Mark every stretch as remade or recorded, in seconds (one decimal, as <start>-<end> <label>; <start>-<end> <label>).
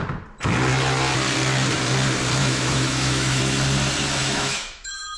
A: 0.0-2.4 recorded; 2.4-3.4 remade; 3.4-4.2 recorded; 4.2-5.2 remade